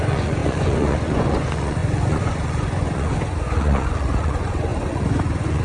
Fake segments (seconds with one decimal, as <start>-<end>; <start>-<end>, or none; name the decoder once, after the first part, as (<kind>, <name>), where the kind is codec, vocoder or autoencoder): 0.0-5.6 (vocoder, Vocos)